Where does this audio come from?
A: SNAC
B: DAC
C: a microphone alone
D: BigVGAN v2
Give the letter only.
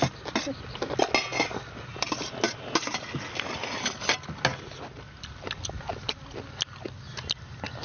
C